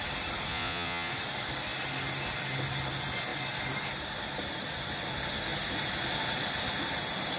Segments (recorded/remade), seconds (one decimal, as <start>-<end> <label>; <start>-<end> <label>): 0.0-0.5 recorded; 0.5-1.1 remade; 1.1-7.4 recorded